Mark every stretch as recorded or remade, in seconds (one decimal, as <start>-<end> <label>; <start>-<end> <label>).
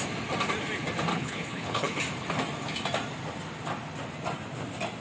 0.0-1.1 recorded; 1.1-2.0 remade; 2.0-5.0 recorded